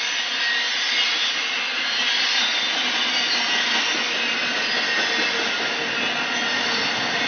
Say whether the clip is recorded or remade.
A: recorded